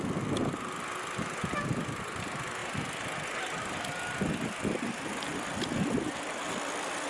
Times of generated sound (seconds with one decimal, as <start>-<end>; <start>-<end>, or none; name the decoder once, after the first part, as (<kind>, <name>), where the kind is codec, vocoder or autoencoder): none